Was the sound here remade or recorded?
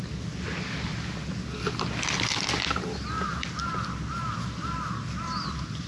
recorded